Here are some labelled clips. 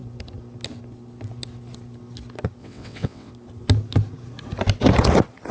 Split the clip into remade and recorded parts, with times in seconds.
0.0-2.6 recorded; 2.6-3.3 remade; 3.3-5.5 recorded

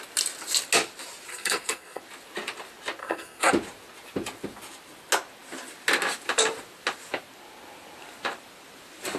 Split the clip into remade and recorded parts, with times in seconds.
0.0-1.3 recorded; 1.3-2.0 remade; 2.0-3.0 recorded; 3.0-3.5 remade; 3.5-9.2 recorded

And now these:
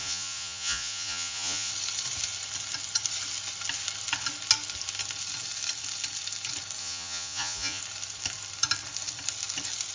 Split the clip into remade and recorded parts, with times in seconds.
0.0-1.7 remade; 1.7-6.8 recorded; 6.8-7.8 remade; 7.8-9.9 recorded